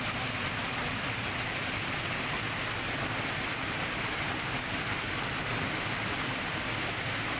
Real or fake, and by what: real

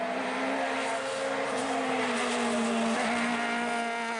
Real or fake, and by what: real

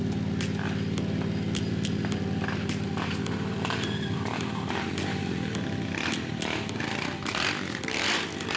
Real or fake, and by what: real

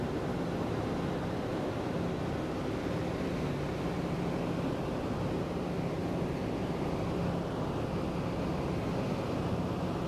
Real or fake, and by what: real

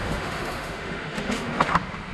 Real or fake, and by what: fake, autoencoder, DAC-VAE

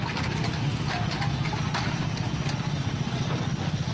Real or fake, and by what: real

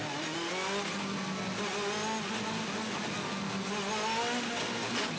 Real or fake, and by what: real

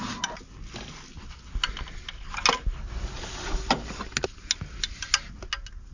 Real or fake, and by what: real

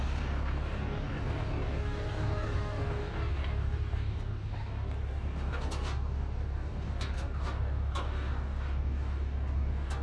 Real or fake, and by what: fake, codec, DAC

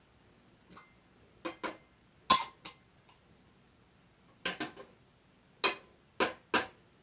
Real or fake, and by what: real